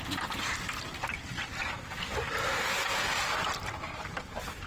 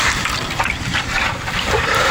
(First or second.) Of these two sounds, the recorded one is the first